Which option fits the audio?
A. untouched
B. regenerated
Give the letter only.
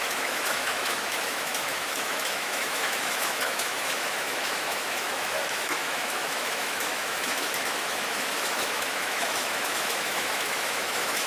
B